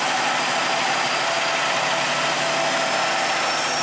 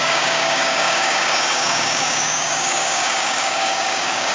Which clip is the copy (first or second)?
second